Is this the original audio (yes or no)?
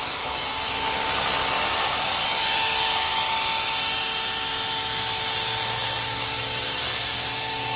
yes